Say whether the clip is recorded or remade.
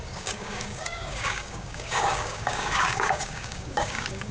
remade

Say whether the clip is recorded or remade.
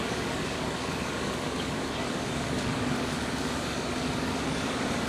remade